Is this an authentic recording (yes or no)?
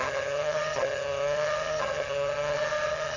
no